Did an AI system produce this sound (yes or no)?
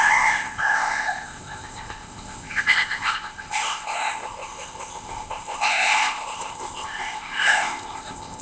yes